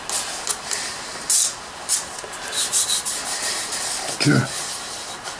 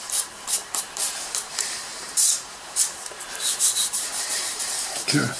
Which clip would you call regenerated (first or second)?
second